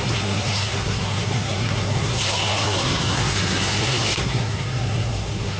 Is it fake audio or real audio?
fake